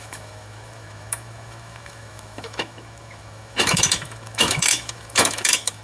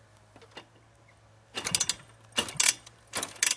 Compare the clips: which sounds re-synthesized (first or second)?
first